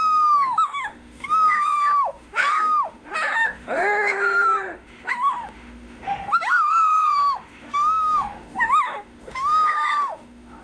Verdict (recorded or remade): remade